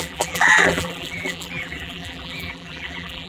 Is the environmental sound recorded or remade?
remade